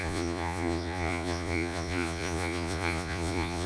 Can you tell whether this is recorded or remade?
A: remade